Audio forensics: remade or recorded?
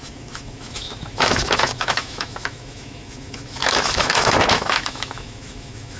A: remade